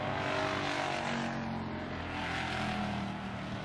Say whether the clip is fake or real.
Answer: real